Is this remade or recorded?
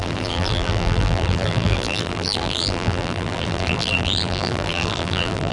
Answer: remade